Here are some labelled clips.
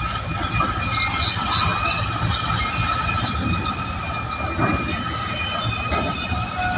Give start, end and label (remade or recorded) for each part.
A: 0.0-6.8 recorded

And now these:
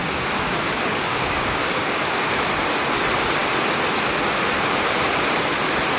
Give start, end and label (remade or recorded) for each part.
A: 0.0-2.3 remade; 2.3-6.0 recorded

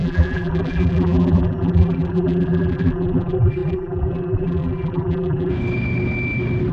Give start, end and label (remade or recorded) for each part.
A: 0.0-5.5 remade; 5.5-6.7 recorded

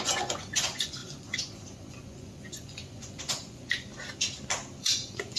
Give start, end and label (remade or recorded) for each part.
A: 0.0-3.9 remade; 3.9-4.8 recorded; 4.8-5.4 remade

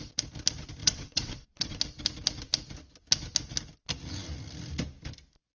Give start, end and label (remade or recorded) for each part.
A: 0.0-0.8 recorded; 0.8-1.8 remade; 1.8-5.6 recorded

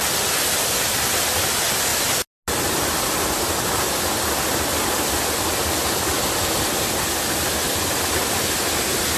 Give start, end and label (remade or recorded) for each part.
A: 0.0-9.2 recorded